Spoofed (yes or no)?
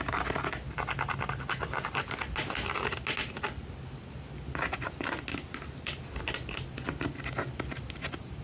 no